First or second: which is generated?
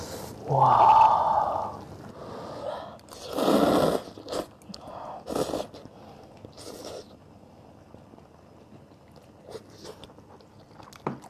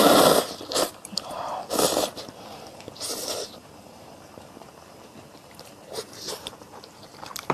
second